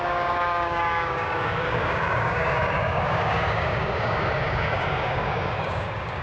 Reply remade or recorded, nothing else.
remade